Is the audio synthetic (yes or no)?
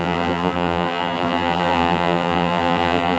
yes